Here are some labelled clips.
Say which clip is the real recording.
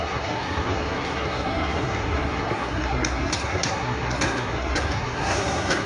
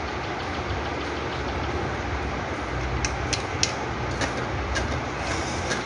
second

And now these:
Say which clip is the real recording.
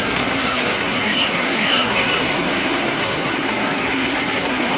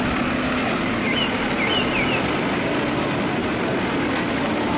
second